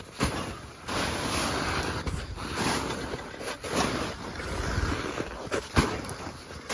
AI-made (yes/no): no